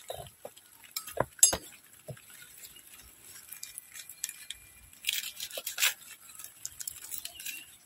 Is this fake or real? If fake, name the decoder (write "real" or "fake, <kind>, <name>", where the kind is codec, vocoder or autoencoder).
real